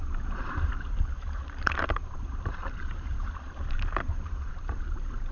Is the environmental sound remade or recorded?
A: remade